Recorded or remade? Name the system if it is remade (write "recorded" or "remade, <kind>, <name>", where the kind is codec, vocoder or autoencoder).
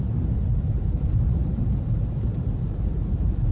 remade, vocoder, BigVGAN v2